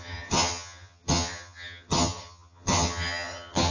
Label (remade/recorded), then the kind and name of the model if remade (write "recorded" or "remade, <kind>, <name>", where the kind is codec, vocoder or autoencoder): remade, vocoder, HiFi-GAN